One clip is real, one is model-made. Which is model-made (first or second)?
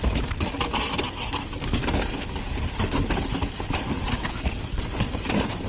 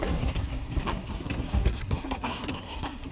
second